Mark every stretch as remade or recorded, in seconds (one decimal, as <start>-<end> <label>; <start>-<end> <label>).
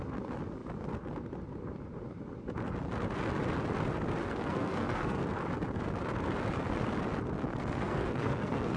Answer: 0.0-4.2 recorded; 4.2-5.2 remade; 5.2-7.4 recorded; 7.4-8.8 remade